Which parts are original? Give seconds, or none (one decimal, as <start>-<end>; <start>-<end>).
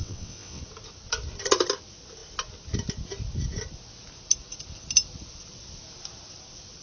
0.6-6.8